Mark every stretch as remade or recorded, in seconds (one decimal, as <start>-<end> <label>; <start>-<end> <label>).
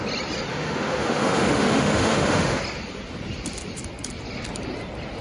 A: 0.0-0.5 recorded; 0.5-2.6 remade; 2.6-5.2 recorded